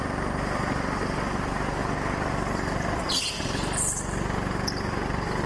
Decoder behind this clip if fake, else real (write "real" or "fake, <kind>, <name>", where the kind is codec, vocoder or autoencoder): real